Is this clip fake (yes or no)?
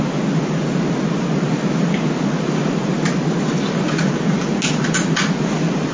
no